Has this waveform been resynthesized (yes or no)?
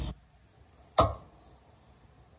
no